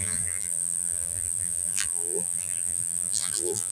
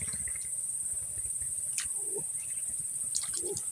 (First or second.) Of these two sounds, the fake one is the first